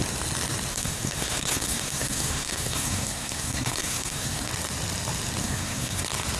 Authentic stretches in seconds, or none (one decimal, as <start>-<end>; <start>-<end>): 0.0-0.7; 4.5-5.4; 6.0-6.4